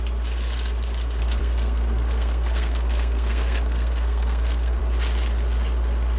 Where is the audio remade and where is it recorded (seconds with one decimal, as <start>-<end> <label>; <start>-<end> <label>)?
0.0-1.4 recorded; 1.4-4.8 remade; 4.8-6.2 recorded